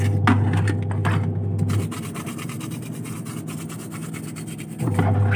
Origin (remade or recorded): recorded